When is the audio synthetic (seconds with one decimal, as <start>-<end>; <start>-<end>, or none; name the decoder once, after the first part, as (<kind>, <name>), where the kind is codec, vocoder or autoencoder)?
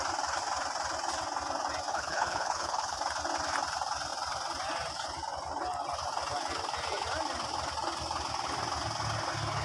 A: 1.9-3.0 (codec, HILCodec)